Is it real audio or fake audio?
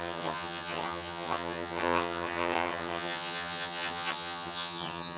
fake